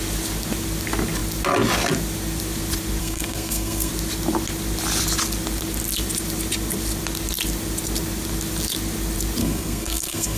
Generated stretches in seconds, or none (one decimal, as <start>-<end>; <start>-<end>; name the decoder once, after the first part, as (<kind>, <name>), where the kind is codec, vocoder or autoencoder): 3.0-3.9 (codec, SNAC); 9.4-10.4